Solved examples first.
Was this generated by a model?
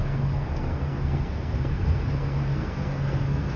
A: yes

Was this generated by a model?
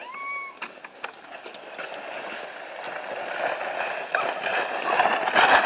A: no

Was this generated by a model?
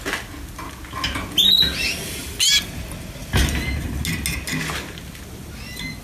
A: no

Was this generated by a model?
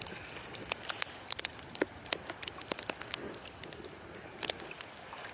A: no